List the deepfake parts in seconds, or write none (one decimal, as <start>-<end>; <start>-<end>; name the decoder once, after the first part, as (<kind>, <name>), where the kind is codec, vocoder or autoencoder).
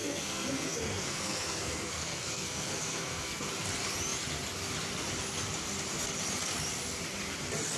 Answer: 0.0-3.5 (codec, SNAC)